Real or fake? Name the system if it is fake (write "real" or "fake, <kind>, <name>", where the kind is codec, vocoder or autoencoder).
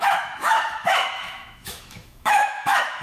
fake, autoencoder, DAC-VAE